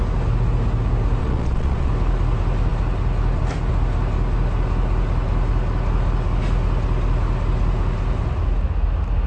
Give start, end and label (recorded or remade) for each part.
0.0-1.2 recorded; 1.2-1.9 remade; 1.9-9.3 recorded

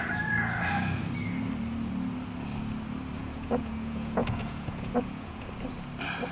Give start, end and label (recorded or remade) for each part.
0.0-3.2 recorded; 3.2-5.5 remade; 5.5-6.3 recorded

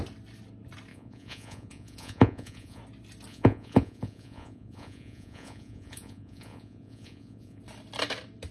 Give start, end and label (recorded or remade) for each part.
0.0-0.9 recorded; 0.9-2.8 remade; 2.8-3.3 recorded; 3.3-7.6 remade; 7.6-8.5 recorded

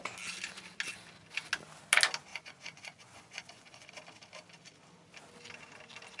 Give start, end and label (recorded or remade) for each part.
0.0-2.3 recorded; 2.3-3.9 remade; 3.9-6.2 recorded

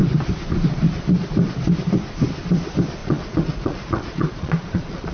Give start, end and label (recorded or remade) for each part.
0.0-3.0 recorded; 3.0-5.1 remade

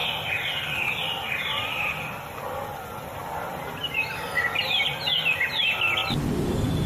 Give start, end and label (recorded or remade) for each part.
0.0-6.9 recorded